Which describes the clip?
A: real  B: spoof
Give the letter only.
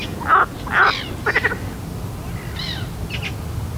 A